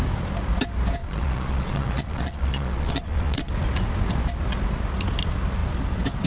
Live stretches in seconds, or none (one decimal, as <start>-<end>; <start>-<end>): 0.0-1.0; 3.5-6.3